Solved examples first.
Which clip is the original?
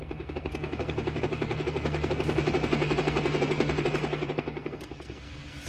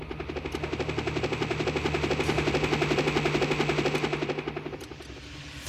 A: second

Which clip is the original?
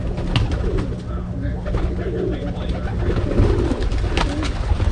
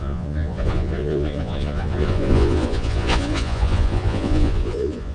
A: first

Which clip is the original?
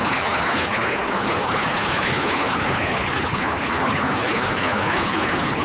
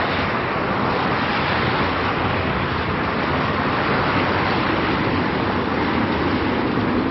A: second